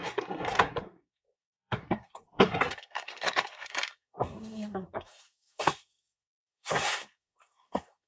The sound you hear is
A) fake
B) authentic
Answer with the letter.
A